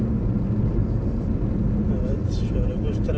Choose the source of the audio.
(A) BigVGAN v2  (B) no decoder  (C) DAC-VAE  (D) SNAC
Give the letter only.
B